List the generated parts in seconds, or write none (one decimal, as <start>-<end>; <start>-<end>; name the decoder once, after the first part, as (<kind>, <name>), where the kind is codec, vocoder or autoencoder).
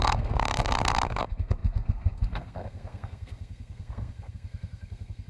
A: 0.0-5.3 (codec, SNAC)